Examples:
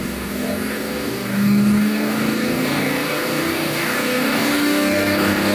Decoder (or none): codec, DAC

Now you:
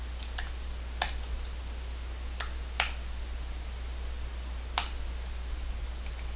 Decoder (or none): none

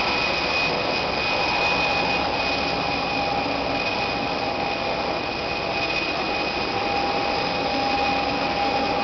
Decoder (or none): none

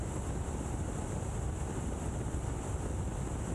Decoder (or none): none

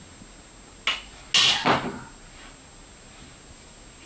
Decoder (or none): none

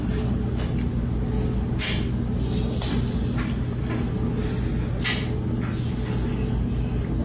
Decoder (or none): none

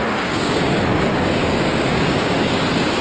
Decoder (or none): codec, DAC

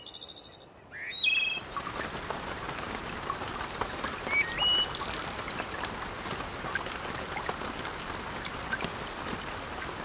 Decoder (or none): none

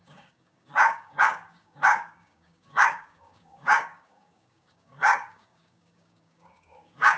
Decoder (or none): codec, DAC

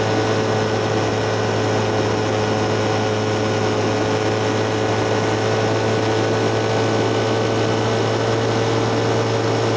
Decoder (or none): none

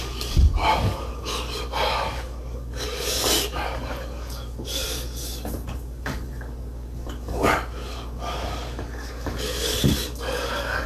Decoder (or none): codec, DAC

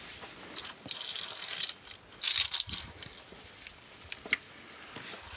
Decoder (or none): none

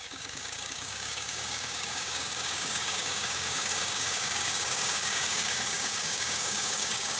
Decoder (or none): codec, DAC